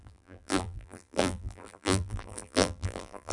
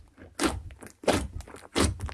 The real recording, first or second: second